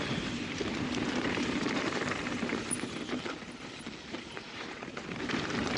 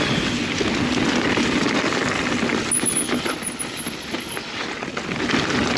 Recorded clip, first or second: second